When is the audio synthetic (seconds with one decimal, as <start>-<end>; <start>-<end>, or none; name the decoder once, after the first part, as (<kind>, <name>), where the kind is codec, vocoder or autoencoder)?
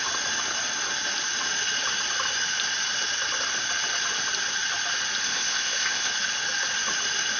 5.2-6.1 (codec, ZipCodec)